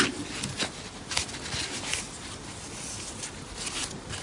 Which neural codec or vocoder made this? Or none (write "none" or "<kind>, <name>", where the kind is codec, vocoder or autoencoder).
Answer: none